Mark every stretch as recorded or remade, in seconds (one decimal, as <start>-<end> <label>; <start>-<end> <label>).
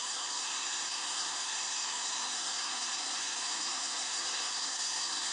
0.0-5.3 remade